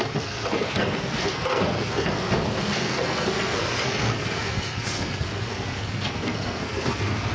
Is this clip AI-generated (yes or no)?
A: yes